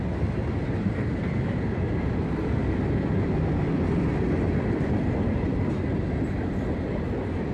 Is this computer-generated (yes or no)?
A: no